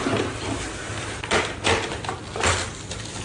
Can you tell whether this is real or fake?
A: real